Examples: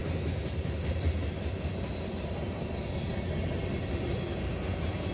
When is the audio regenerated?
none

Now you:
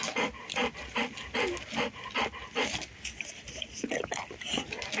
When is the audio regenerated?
none

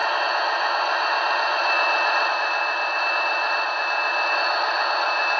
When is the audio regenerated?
none